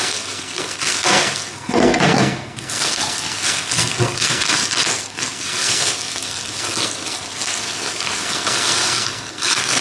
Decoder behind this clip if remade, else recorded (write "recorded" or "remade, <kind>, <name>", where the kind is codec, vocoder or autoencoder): remade, codec, SNAC